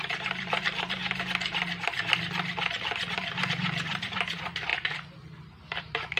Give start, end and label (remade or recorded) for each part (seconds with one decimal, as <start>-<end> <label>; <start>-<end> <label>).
0.0-1.0 remade; 1.0-3.5 recorded; 3.5-4.7 remade; 4.7-5.8 recorded; 5.8-6.2 remade